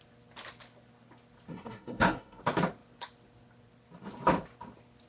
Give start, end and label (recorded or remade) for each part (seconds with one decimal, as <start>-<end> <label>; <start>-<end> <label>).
0.0-1.5 recorded; 1.5-2.4 remade; 2.4-5.1 recorded